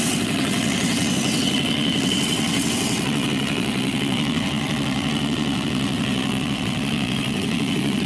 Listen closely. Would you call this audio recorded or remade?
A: remade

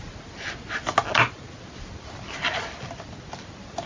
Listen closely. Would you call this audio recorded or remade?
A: recorded